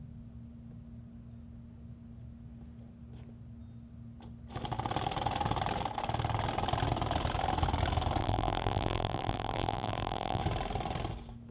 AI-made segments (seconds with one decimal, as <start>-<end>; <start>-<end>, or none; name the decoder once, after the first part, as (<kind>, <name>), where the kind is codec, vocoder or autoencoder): 8.2-10.4 (vocoder, BigVGAN v2)

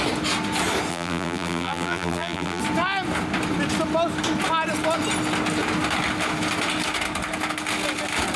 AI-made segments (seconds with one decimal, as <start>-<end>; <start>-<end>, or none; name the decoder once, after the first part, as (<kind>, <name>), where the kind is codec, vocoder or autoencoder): 0.9-2.6 (vocoder, BigVGAN v2)

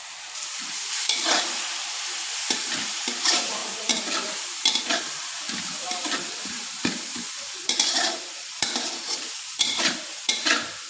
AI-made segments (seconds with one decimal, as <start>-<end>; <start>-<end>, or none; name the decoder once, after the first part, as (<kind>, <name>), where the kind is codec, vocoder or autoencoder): 0.0-10.9 (vocoder, BigVGAN v2)

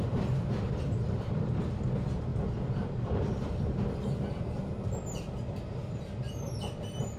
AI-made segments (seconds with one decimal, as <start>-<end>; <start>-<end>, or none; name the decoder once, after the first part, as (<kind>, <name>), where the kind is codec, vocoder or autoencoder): 5.8-6.8 (vocoder, BigVGAN v2)

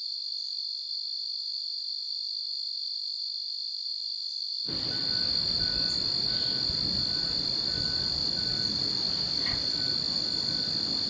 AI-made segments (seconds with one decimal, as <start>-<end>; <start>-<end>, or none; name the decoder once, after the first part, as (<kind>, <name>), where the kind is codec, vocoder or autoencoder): 3.9-11.1 (vocoder, BigVGAN v2)

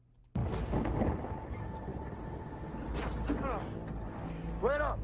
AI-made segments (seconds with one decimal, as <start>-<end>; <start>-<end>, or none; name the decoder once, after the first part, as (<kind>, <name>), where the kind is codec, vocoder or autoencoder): none